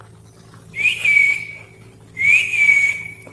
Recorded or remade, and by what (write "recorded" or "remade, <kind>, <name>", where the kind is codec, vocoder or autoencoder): recorded